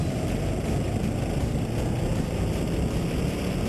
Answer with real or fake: real